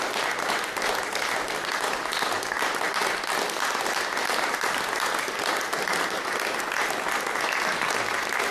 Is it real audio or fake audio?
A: real